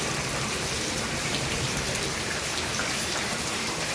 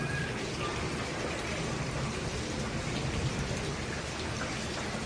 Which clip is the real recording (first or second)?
second